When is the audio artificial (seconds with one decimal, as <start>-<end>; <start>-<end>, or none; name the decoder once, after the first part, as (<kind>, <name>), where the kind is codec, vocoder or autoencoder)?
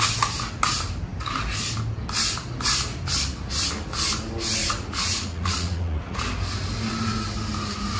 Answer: 4.6-6.2 (vocoder, Vocos)